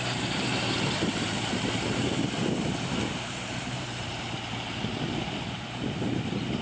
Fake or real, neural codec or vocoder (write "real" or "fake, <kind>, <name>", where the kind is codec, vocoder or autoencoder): fake, vocoder, BigVGAN v2